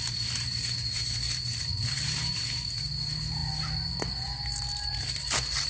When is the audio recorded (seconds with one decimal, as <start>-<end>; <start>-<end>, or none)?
3.4-4.9